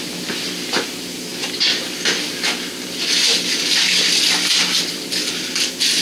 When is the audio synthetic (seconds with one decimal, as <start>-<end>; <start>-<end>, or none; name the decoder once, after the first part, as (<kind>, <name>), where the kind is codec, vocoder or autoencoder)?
none